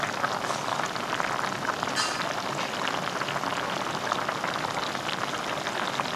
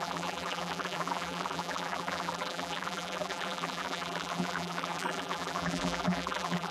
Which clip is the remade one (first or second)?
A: second